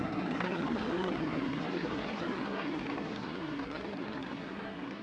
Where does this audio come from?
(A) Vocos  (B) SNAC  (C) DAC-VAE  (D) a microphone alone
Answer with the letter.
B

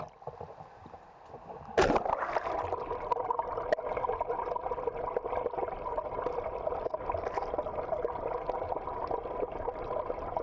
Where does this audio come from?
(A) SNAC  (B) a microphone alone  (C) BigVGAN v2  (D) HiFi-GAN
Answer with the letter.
B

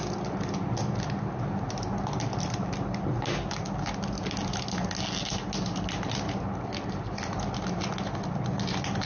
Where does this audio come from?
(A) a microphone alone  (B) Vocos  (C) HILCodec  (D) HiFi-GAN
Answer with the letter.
A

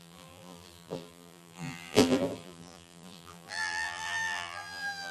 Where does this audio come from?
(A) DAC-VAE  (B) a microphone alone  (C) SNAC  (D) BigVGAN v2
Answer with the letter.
D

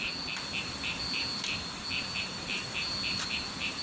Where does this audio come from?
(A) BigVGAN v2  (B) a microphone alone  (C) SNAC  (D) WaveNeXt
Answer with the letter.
B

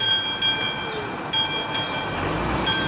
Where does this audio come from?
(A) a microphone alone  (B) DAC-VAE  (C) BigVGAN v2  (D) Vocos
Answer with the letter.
A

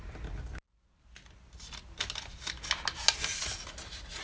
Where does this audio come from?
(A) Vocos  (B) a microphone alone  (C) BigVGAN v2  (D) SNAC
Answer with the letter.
B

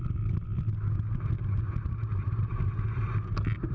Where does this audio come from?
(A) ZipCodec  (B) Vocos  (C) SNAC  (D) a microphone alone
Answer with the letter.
D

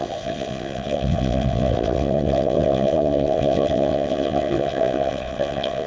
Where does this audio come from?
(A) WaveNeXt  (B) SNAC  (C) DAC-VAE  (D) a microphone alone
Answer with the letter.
A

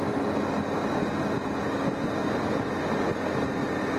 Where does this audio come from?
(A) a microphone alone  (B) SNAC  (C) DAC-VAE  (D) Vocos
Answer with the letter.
A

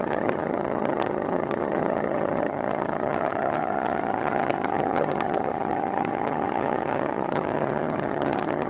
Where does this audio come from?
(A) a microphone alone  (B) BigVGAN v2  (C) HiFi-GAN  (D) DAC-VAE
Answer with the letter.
C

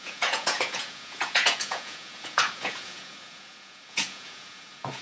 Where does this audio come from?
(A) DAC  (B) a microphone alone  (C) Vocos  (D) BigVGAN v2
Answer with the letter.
C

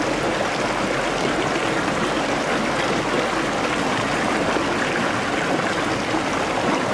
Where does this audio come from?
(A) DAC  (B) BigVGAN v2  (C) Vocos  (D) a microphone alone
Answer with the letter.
D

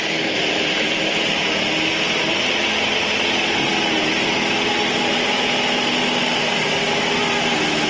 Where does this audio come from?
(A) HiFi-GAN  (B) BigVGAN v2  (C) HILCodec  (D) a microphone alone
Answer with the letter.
D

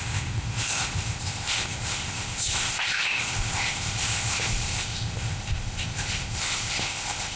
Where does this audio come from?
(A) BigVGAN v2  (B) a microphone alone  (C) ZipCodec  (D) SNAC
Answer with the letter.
C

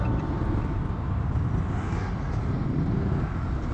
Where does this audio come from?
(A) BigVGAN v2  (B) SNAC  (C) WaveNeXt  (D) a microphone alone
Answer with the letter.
D